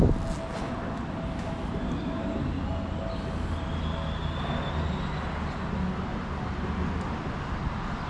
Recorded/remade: recorded